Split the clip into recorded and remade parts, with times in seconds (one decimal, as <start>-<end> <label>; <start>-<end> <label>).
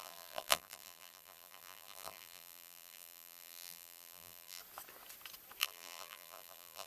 0.0-4.6 remade; 4.6-5.6 recorded; 5.6-6.9 remade